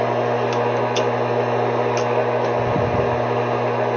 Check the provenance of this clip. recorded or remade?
recorded